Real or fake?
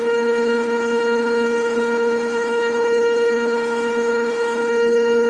fake